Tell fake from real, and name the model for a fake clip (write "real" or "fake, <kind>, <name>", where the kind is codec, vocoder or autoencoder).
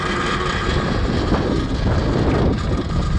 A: real